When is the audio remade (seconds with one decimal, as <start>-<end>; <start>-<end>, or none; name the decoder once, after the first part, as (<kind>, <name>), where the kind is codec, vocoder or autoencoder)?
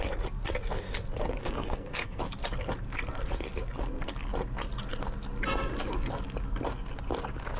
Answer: 1.4-2.2 (codec, SNAC)